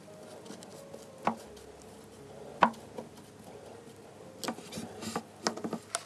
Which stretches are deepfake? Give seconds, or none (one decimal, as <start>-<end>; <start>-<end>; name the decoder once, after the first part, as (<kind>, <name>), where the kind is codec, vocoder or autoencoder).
none